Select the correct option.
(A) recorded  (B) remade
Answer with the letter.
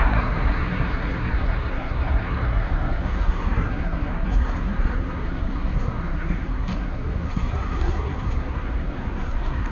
B